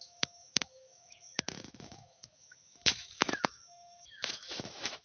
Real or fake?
fake